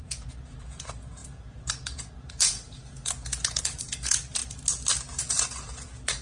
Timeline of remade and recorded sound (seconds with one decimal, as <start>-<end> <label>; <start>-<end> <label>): 0.0-4.4 remade; 4.4-5.2 recorded; 5.2-6.2 remade